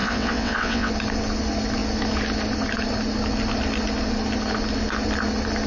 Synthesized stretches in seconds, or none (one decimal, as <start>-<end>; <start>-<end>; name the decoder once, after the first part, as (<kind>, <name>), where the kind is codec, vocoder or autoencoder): 0.0-0.9 (vocoder, WaveNeXt)